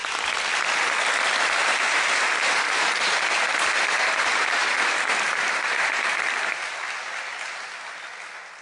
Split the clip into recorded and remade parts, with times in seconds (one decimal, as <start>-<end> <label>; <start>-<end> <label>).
0.0-1.6 recorded; 1.6-6.7 remade; 6.7-8.6 recorded